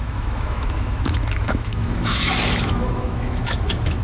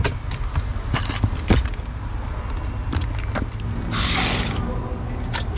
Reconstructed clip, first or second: first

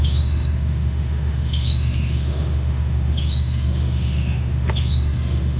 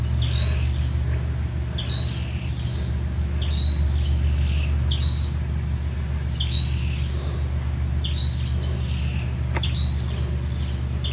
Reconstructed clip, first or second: first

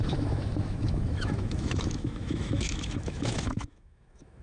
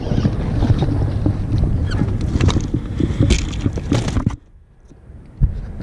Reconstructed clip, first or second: first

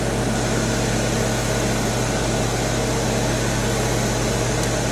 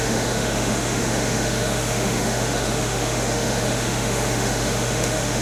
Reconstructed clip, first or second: second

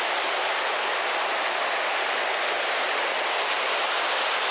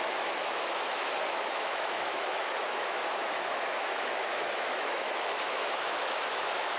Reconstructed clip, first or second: second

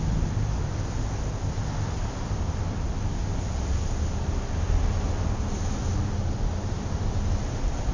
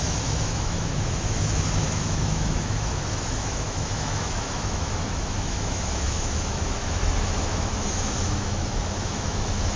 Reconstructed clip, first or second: second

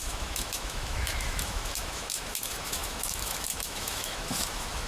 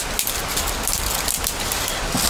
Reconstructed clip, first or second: first